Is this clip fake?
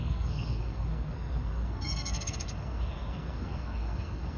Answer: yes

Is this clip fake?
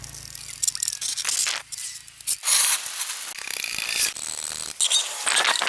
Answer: no